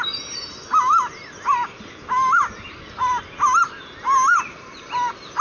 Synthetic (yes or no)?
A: no